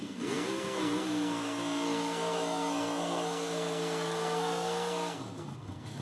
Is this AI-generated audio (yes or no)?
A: yes